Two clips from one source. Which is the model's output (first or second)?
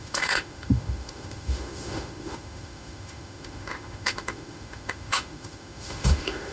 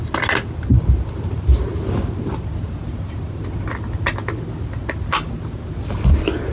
first